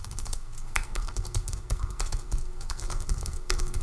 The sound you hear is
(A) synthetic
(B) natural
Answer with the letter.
A